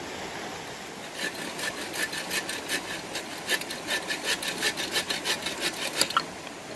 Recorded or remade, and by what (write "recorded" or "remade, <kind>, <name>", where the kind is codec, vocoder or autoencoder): recorded